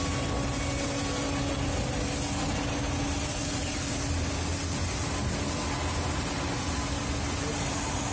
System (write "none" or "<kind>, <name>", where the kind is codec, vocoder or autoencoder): none